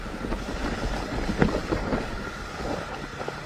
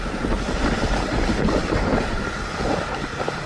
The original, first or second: first